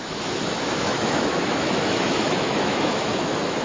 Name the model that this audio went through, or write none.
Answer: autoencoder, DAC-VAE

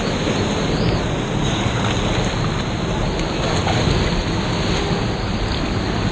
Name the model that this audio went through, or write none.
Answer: none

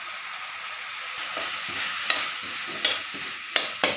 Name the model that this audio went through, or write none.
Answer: none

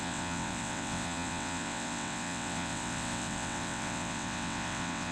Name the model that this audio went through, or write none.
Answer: vocoder, WaveNeXt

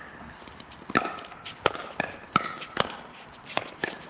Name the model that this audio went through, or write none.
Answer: none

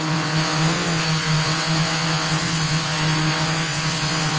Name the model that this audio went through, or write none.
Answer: vocoder, WaveNeXt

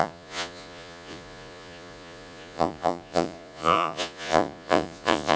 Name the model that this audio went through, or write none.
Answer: vocoder, Vocos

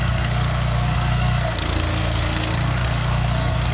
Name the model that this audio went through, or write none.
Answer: codec, SNAC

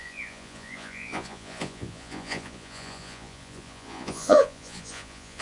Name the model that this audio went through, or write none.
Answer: vocoder, Vocos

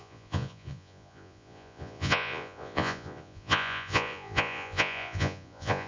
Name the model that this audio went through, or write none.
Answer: vocoder, Vocos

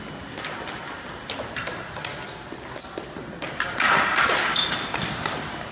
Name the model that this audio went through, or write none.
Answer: none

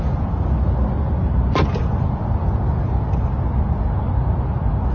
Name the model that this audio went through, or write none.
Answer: none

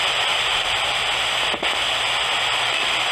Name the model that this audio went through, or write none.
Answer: none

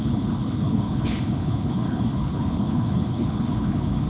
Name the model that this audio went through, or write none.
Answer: codec, HILCodec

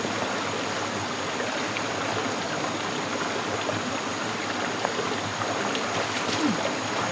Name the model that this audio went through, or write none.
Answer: none